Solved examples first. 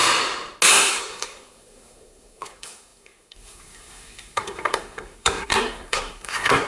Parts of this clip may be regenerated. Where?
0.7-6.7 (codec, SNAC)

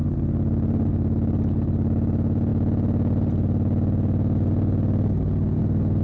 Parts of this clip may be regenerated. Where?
none